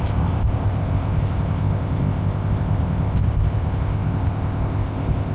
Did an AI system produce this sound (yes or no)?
yes